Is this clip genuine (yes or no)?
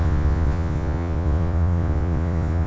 no